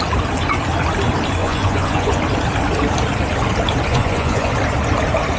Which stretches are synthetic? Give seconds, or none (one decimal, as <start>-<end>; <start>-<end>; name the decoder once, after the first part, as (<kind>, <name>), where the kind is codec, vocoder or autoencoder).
1.4-2.2 (vocoder, Vocos); 3.9-4.5